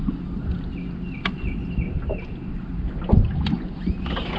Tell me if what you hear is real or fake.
real